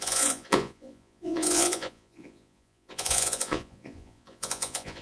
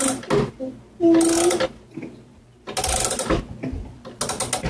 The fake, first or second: first